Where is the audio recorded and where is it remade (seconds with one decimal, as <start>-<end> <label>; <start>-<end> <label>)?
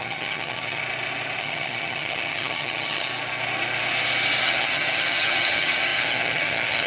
0.0-0.8 remade; 0.8-1.4 recorded; 1.4-3.1 remade; 3.1-4.4 recorded; 4.4-6.9 remade